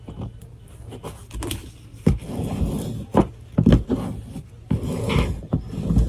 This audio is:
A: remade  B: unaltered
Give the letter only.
B